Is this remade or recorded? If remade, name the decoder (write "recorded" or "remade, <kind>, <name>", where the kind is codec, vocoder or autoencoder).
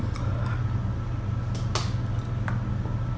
recorded